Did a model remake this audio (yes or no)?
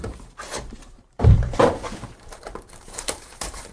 yes